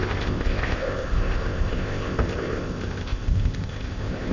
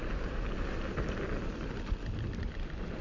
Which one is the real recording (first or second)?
second